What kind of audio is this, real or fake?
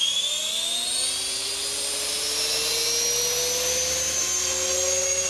real